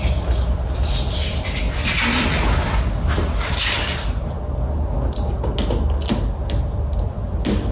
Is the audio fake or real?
real